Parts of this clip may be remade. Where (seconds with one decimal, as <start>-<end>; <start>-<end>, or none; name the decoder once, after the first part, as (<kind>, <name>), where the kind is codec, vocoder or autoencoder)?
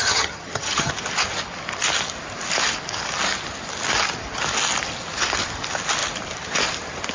0.0-0.9 (vocoder, HiFi-GAN)